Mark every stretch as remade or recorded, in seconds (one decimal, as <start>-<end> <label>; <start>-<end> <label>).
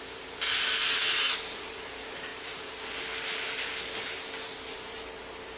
0.0-2.3 recorded; 2.3-2.8 remade; 2.8-5.6 recorded